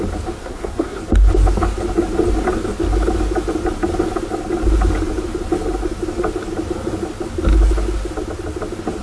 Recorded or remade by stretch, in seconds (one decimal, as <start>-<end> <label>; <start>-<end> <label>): 0.0-0.4 recorded; 0.4-1.0 remade; 1.0-9.0 recorded